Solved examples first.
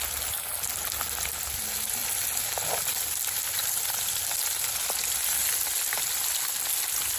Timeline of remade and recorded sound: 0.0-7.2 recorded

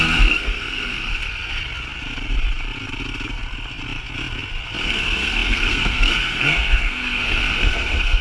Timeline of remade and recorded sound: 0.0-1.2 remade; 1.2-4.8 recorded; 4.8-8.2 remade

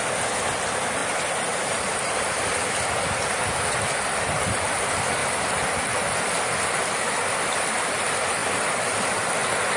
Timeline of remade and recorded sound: 0.0-1.0 recorded; 1.0-2.5 remade; 2.5-5.2 recorded; 5.2-5.8 remade; 5.8-9.8 recorded